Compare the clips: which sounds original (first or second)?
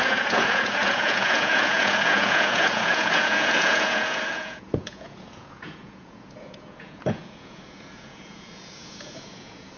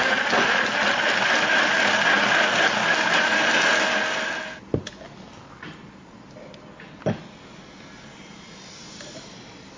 second